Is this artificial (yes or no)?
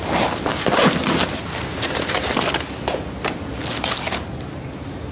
no